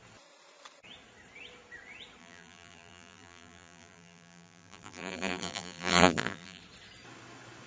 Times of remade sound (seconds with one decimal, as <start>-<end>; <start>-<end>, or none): 2.2-6.6